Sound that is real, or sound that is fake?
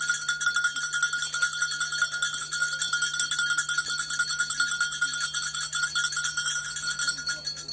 real